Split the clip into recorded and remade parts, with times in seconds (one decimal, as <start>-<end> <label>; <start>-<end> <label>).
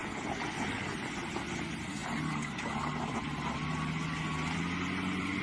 0.0-5.4 recorded